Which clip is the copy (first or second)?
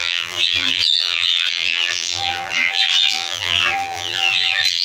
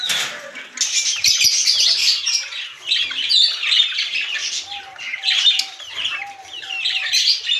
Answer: first